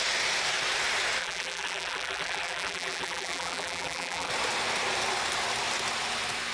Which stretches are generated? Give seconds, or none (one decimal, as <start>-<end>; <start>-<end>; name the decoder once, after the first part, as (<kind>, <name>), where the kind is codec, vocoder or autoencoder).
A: 1.2-4.3 (vocoder, BigVGAN v2)